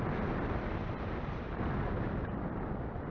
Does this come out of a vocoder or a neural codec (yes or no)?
yes